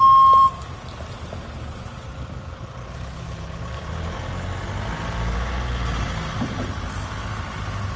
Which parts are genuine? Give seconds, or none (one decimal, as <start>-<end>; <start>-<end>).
0.0-8.0